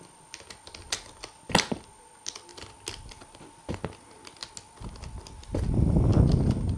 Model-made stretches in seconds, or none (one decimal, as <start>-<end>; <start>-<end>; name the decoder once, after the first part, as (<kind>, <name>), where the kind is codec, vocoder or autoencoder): none